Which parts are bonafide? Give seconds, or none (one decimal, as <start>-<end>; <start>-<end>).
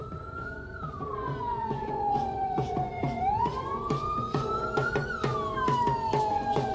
5.3-6.3